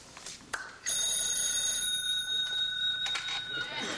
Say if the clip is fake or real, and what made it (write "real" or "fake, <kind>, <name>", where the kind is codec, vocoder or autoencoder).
fake, vocoder, BigVGAN v2